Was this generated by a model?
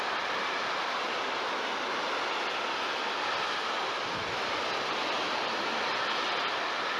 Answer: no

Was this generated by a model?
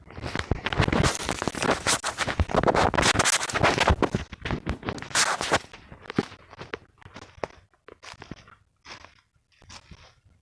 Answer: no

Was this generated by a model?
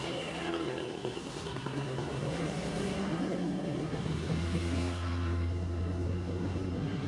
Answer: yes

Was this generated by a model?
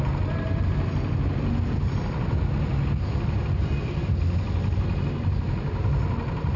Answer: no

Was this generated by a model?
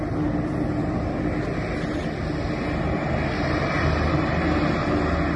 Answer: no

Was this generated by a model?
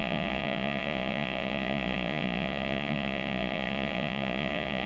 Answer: yes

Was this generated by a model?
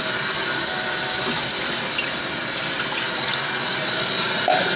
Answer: no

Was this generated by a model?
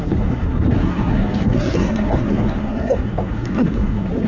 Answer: yes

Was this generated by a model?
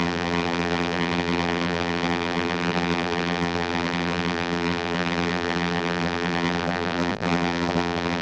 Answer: yes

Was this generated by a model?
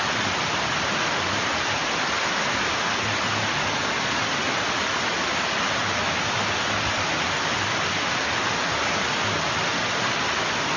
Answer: no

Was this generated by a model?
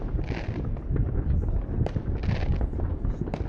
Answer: no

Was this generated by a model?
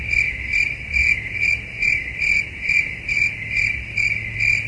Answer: no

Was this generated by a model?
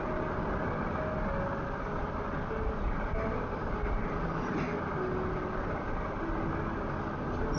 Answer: no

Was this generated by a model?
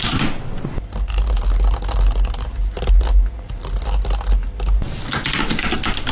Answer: no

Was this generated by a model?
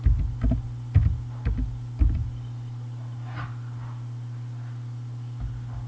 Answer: no